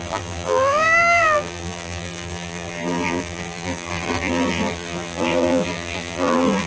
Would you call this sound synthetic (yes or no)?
yes